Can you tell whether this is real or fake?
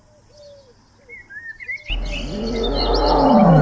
real